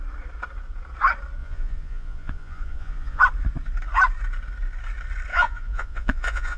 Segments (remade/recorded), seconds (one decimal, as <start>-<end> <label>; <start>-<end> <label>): 0.0-1.4 recorded; 1.4-3.2 remade; 3.2-5.3 recorded; 5.3-6.6 remade